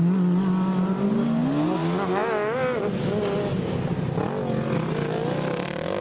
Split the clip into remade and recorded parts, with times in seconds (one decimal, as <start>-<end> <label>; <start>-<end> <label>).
0.0-6.0 recorded